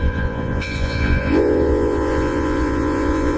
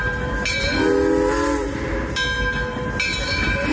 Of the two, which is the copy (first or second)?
first